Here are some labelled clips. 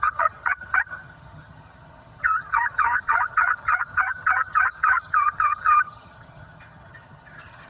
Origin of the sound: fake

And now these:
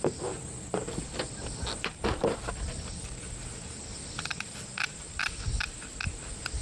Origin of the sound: real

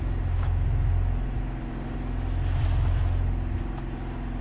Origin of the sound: real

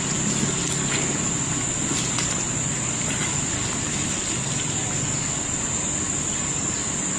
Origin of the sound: real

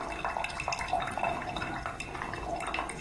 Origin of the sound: real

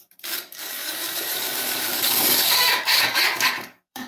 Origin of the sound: fake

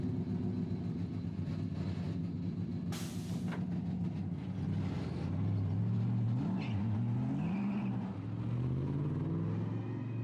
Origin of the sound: real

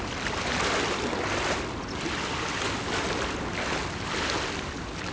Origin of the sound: real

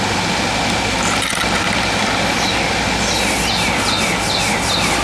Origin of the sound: real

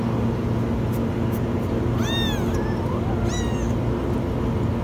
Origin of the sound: real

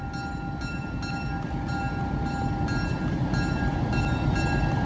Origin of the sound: real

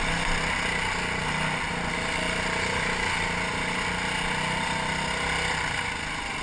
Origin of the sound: real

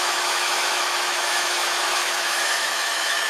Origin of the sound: fake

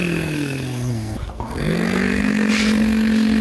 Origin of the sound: fake